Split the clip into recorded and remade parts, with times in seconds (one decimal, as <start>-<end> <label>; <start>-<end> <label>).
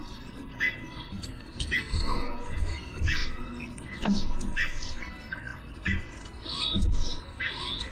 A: 0.0-7.9 remade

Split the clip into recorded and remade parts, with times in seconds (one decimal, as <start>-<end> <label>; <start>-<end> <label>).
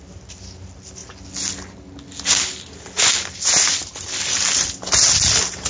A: 0.0-5.7 recorded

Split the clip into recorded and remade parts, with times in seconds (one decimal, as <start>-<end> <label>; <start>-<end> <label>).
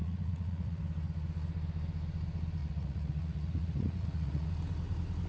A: 0.0-0.8 remade; 0.8-2.6 recorded; 2.6-4.5 remade; 4.5-5.3 recorded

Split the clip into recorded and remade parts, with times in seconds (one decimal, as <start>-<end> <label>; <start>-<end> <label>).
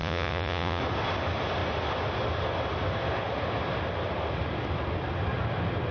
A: 0.0-0.8 remade; 0.8-5.9 recorded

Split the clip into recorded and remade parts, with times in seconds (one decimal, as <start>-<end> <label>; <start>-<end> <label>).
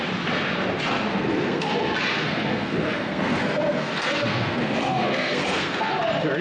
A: 0.0-1.1 recorded; 1.1-1.7 remade; 1.7-2.1 recorded; 2.1-5.9 remade; 5.9-6.4 recorded